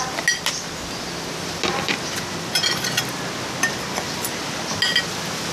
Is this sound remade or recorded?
recorded